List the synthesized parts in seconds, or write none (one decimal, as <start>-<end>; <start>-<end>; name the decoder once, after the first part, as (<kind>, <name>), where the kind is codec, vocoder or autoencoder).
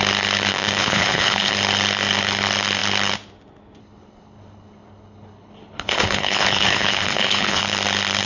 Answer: 0.8-1.5 (codec, HILCodec); 3.8-7.6